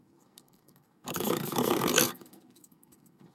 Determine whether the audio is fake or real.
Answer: fake